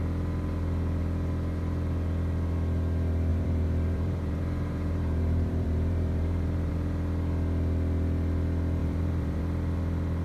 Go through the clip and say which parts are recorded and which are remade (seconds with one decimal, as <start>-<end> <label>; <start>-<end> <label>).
0.0-3.3 recorded; 3.3-6.7 remade; 6.7-8.8 recorded; 8.8-9.4 remade; 9.4-10.2 recorded